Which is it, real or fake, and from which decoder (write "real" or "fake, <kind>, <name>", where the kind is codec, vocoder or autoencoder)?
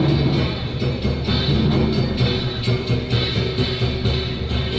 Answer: real